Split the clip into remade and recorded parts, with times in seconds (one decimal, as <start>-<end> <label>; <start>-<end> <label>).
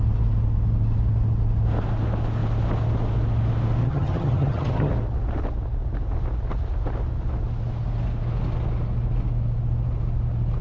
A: 0.0-3.8 recorded; 3.8-4.9 remade; 4.9-10.6 recorded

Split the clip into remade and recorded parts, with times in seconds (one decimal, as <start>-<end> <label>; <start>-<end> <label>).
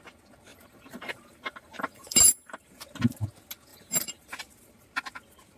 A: 0.0-0.5 recorded; 0.5-2.7 remade; 2.7-3.7 recorded; 3.7-4.4 remade; 4.4-5.6 recorded